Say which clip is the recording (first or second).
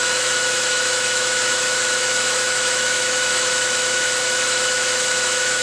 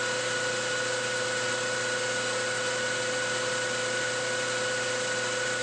second